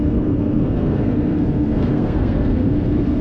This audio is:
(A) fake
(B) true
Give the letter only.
A